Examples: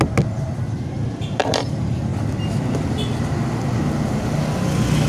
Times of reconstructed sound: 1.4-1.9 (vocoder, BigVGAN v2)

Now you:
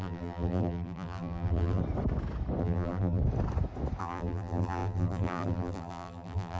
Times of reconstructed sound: 0.0-1.8 (vocoder, BigVGAN v2); 2.6-3.2; 4.0-6.6

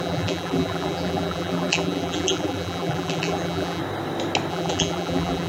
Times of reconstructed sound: 0.0-3.8 (vocoder, BigVGAN v2); 4.5-5.5

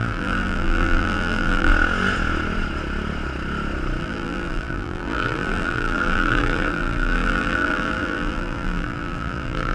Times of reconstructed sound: 0.0-1.7 (vocoder, BigVGAN v2); 4.0-9.7

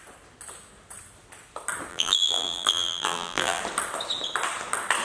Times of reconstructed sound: 1.9-3.6 (vocoder, BigVGAN v2)